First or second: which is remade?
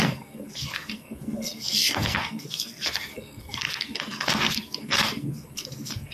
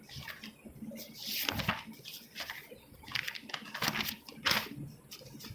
first